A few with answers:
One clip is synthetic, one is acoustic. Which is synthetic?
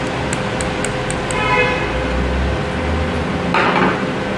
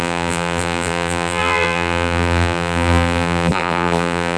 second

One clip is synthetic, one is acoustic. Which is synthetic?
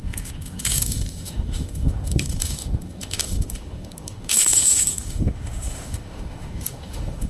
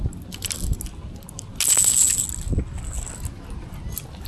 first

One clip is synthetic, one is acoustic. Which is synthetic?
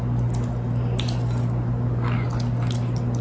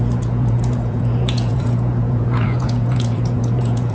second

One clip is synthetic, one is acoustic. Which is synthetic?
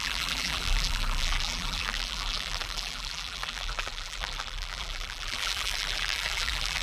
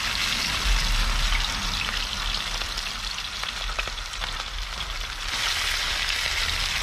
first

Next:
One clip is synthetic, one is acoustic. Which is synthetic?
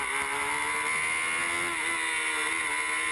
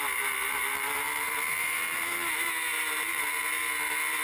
second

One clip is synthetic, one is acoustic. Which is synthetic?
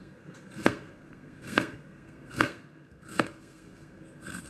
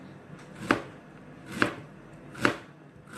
first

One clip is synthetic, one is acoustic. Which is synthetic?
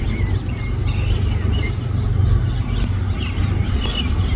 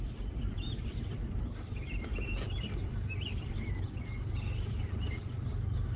second